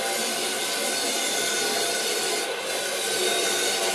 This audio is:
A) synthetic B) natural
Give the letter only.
B